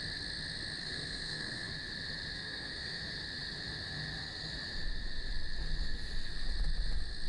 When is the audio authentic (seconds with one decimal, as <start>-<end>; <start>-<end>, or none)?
0.0-0.8; 1.7-2.4; 3.0-7.3